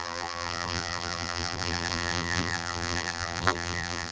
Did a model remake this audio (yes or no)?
yes